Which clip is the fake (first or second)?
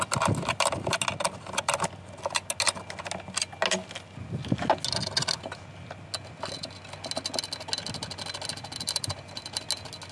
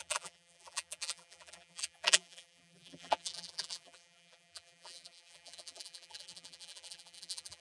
second